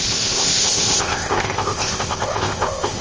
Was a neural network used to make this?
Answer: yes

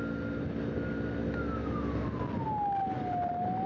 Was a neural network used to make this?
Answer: no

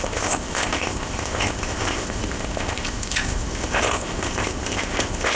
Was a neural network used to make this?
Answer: yes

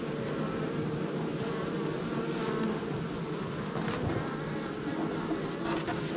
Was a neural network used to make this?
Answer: no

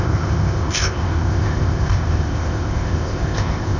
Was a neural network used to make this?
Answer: yes